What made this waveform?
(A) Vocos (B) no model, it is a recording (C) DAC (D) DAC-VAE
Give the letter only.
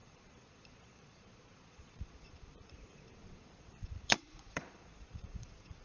A